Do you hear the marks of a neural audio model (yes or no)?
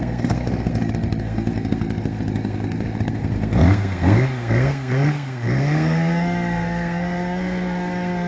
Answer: yes